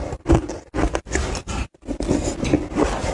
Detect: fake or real real